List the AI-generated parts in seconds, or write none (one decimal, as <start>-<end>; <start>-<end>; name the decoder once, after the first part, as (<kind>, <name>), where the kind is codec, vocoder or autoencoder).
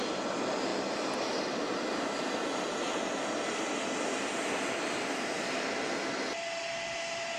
none